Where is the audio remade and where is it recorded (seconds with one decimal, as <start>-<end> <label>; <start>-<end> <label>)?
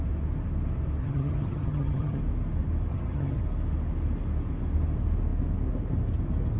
0.0-1.0 recorded; 1.0-2.2 remade; 2.2-2.9 recorded; 2.9-3.4 remade; 3.4-6.6 recorded